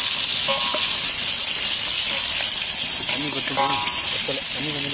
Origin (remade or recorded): recorded